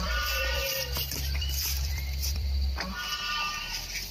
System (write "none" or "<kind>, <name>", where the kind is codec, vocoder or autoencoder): vocoder, BigVGAN v2